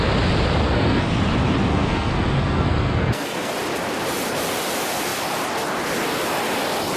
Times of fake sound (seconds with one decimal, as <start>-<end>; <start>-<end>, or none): 0.6-1.1; 1.7-3.5